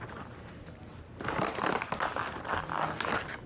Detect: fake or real real